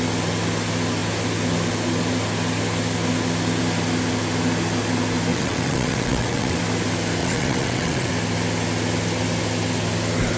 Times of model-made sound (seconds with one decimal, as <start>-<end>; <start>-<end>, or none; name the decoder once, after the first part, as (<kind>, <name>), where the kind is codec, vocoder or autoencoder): 5.3-6.6 (vocoder, WaveNeXt); 7.2-8.1